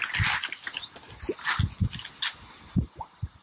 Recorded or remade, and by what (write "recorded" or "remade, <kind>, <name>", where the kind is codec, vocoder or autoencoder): recorded